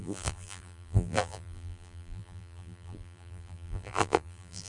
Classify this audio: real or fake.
fake